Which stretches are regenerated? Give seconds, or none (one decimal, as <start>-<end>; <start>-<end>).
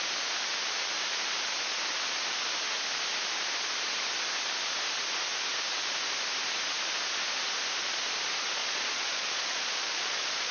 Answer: 8.6-10.5